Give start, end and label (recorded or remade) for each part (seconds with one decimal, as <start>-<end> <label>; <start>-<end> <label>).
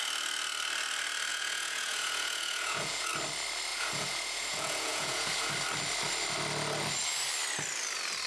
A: 0.0-1.3 recorded; 1.3-3.1 remade; 3.1-3.7 recorded; 3.7-5.5 remade; 5.5-8.3 recorded